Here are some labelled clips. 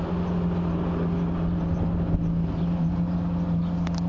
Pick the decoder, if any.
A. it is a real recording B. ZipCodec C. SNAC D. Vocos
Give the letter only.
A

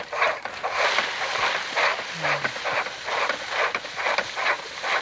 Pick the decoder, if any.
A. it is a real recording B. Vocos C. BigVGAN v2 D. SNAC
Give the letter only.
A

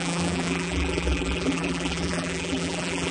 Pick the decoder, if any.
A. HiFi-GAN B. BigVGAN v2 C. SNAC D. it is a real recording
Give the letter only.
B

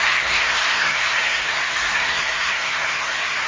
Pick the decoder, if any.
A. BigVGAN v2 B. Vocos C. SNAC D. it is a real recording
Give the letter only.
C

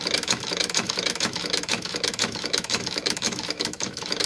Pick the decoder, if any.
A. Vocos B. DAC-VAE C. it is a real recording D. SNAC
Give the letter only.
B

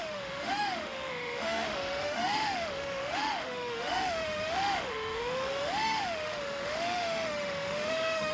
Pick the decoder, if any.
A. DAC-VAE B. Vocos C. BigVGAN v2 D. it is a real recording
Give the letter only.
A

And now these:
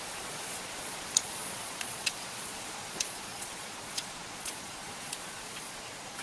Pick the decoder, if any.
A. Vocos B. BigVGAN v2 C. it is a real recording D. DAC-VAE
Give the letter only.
A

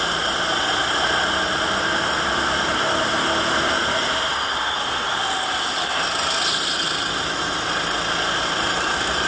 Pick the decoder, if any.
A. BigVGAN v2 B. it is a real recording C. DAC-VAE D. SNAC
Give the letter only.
B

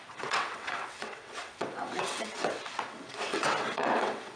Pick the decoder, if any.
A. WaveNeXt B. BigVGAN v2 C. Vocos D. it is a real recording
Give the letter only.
A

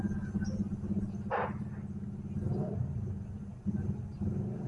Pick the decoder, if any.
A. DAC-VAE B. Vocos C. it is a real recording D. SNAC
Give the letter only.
C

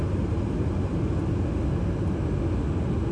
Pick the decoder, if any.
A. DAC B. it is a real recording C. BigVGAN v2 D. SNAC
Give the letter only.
B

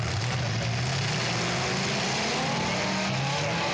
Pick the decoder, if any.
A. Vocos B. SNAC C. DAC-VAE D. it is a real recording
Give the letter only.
D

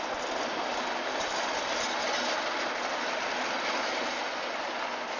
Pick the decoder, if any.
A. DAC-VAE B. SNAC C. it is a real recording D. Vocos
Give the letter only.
C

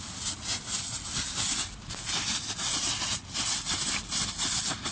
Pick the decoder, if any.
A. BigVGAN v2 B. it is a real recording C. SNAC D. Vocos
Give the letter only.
B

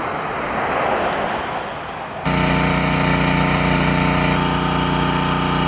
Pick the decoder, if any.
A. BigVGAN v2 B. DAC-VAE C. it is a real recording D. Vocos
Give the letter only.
C